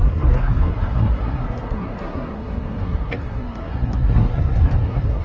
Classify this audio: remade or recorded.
remade